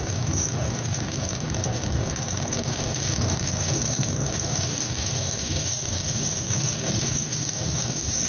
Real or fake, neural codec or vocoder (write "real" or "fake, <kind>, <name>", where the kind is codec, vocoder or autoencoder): fake, codec, DAC